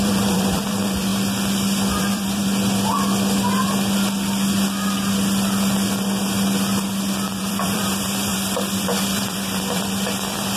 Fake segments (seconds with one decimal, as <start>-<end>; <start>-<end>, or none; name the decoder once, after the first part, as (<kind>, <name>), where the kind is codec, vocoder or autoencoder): 0.0-1.1 (vocoder, BigVGAN v2); 2.0-2.4; 7.4-10.6